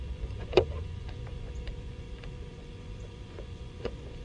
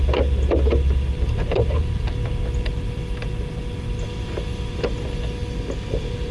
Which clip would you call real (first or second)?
second